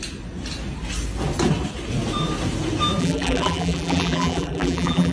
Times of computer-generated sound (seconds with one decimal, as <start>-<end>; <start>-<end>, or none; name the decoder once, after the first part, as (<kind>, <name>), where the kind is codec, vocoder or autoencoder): 3.0-5.1 (vocoder, BigVGAN v2)